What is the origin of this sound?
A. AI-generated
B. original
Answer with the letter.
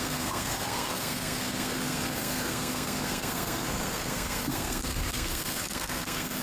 A